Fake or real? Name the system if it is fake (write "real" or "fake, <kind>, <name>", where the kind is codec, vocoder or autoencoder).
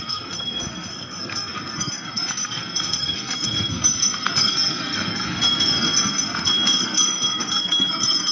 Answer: fake, codec, SNAC